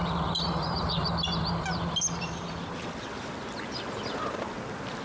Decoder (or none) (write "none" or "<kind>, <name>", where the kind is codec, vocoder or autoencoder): none